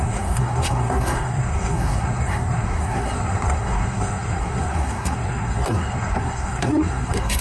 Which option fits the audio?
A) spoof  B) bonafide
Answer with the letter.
A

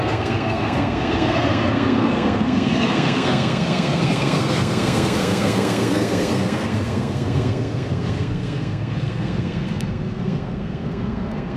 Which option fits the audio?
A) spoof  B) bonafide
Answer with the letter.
A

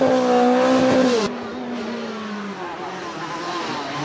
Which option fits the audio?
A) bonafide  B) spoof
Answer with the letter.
A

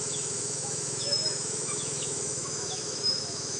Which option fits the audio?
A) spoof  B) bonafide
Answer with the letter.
A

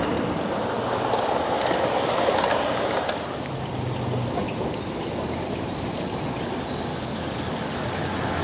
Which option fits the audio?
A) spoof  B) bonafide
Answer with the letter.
B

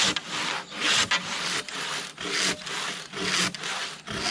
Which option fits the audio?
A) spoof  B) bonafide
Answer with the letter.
B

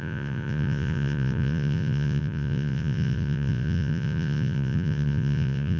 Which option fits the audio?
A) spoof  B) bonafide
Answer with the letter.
A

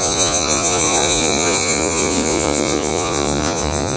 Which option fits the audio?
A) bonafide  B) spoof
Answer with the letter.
B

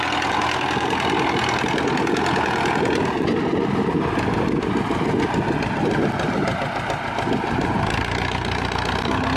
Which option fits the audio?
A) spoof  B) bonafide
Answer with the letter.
B